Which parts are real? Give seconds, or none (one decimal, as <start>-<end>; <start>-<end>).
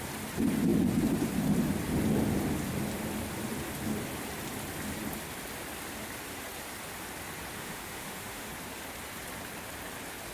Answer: 0.0-7.6; 8.5-10.3